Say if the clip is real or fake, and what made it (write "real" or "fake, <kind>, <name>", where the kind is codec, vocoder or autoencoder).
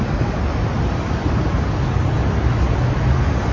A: real